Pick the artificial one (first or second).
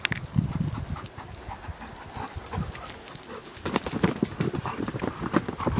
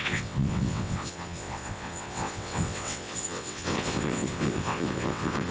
second